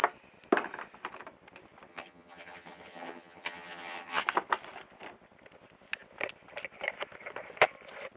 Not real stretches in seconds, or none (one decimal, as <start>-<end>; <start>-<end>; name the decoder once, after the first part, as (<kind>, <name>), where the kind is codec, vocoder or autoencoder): 1.9-4.2 (vocoder, HiFi-GAN)